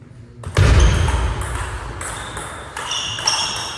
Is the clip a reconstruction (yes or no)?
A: no